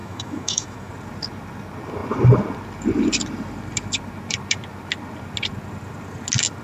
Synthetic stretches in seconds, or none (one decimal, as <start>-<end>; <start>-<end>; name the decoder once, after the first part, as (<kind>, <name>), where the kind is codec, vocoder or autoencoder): 0.0-0.9 (autoencoder, DAC-VAE)